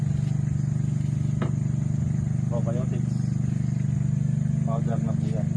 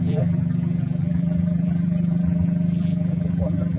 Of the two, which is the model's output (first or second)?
second